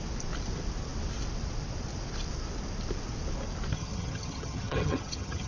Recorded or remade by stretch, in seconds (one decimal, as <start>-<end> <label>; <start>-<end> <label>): 0.0-3.7 recorded; 3.7-5.5 remade